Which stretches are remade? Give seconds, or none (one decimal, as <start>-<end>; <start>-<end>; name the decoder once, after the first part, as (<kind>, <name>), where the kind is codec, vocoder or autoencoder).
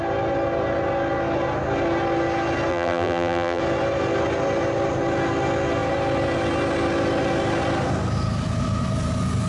2.7-3.6 (vocoder, BigVGAN v2)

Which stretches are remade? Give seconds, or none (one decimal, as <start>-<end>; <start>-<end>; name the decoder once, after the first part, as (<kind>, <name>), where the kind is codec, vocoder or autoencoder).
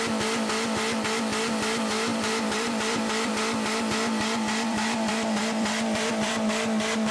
2.1-3.3 (vocoder, BigVGAN v2); 4.7-6.3